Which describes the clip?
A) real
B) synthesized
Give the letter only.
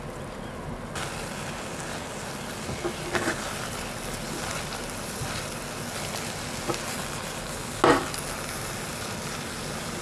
A